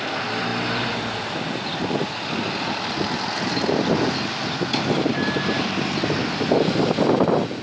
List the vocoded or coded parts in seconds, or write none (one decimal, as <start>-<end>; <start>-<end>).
none